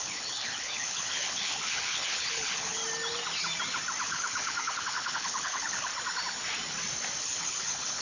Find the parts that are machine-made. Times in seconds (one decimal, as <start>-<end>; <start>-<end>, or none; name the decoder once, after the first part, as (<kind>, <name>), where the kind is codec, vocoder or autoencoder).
0.0-2.8 (codec, HILCodec); 4.0-5.9; 7.2-8.0